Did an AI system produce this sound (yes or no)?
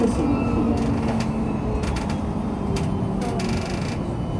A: no